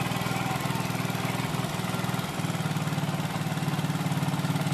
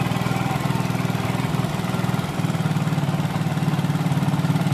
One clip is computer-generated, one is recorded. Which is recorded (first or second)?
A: first